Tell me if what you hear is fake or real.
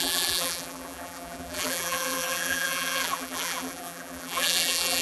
fake